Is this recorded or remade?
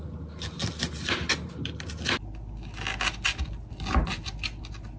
recorded